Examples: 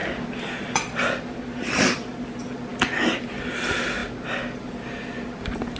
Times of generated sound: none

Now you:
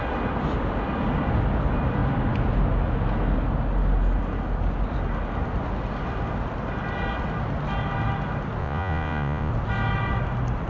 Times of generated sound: 8.6-9.5 (vocoder, Vocos)

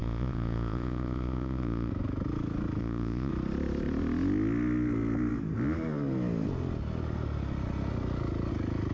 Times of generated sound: 0.0-1.9 (vocoder, Vocos); 2.8-3.3